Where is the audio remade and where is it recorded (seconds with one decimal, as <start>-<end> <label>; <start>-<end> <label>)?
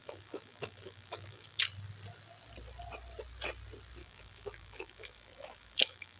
0.0-1.6 remade; 1.6-4.0 recorded; 4.0-6.2 remade